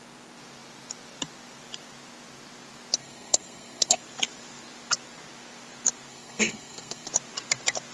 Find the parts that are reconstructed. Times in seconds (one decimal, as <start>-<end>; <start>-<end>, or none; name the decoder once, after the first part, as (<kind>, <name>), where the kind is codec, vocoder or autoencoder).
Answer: 3.0-4.0 (codec, SNAC); 6.1-7.1